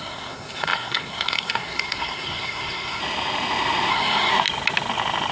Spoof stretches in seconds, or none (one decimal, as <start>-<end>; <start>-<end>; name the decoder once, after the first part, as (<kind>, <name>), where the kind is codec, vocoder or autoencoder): 0.0-3.0 (codec, SNAC); 3.9-4.3